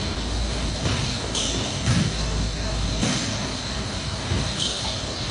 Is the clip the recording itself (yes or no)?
no